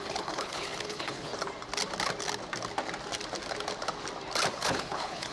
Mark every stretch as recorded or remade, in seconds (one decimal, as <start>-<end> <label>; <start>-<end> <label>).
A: 0.0-1.3 remade; 1.3-4.5 recorded; 4.5-5.3 remade